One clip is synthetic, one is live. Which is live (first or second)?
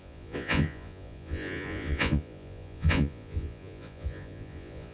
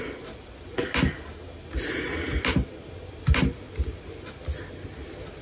second